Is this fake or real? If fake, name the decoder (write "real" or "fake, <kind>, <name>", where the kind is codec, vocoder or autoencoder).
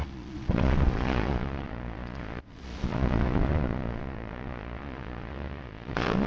fake, vocoder, Vocos